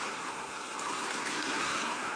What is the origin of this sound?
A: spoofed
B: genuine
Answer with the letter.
A